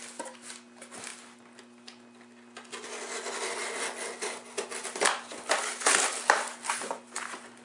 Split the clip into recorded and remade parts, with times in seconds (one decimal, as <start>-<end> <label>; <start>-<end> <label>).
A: 0.0-7.6 recorded